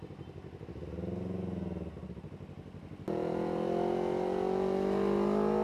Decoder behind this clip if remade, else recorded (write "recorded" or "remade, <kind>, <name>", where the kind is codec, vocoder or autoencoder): recorded